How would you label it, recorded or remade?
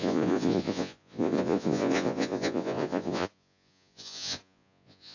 remade